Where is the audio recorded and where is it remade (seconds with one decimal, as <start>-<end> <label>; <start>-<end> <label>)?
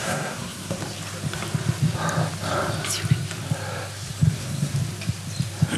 0.0-0.8 remade; 0.8-4.3 recorded; 4.3-4.7 remade; 4.7-5.8 recorded